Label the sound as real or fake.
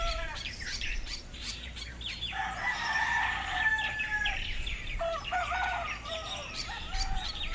fake